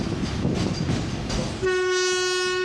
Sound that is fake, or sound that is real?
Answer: real